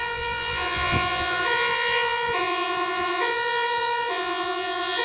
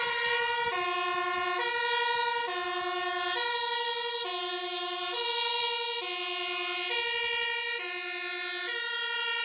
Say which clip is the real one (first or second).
second